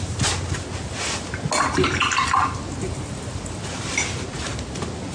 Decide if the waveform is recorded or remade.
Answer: recorded